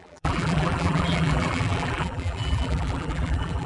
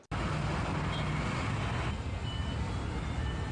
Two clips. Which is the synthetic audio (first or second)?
first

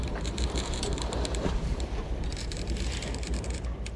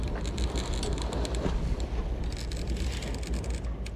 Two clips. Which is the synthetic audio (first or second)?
first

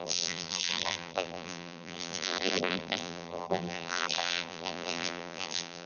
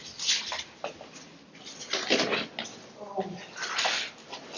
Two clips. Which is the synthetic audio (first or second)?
first